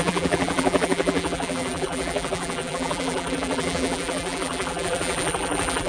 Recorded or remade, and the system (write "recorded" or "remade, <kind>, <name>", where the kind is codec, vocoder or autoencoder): remade, vocoder, BigVGAN v2